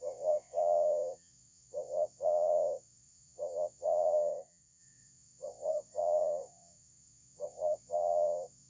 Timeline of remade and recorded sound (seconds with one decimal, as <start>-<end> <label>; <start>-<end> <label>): 0.0-8.7 remade